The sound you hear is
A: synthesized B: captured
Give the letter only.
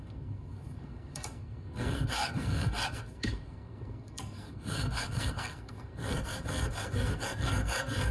A